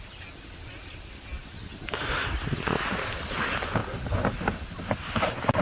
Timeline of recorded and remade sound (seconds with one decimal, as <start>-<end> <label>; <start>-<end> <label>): 0.0-5.6 recorded